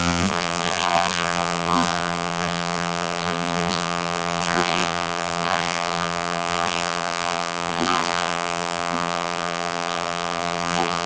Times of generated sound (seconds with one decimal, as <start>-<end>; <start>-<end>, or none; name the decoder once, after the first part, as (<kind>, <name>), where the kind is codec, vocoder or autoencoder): 0.0-11.1 (vocoder, BigVGAN v2)